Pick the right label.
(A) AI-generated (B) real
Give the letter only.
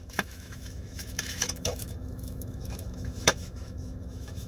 A